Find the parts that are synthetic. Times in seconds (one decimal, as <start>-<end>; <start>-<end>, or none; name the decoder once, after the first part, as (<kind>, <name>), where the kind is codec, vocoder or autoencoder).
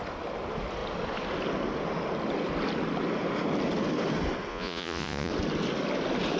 4.5-5.3 (vocoder, Vocos)